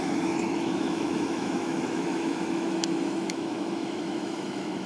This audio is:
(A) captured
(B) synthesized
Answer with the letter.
B